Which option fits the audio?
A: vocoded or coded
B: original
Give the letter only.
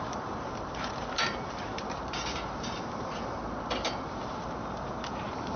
A